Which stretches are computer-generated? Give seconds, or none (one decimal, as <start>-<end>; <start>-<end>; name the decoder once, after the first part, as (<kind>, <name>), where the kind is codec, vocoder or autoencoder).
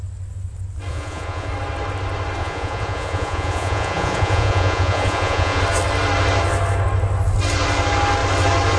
0.9-1.5 (vocoder, Vocos); 2.4-5.6